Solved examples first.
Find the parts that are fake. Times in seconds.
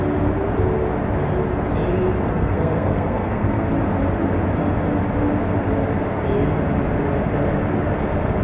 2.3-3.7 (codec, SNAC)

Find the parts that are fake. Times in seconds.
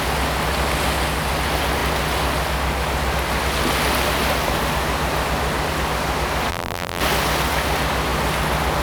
6.5-7.0 (vocoder, BigVGAN v2)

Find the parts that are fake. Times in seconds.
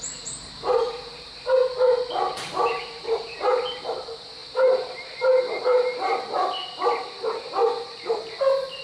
0.0-1.6 (vocoder, BigVGAN v2); 2.5-8.8